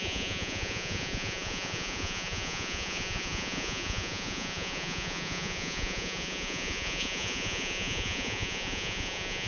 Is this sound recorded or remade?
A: remade